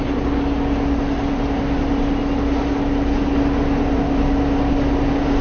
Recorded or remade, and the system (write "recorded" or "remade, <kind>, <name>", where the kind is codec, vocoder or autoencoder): recorded